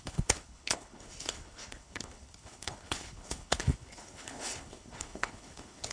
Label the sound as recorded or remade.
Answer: remade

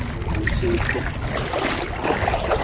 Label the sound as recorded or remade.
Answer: recorded